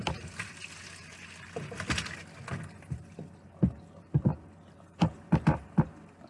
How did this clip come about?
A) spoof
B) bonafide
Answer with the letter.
B